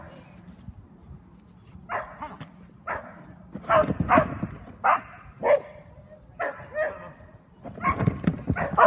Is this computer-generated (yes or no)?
no